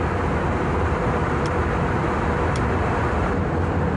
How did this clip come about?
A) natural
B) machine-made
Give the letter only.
A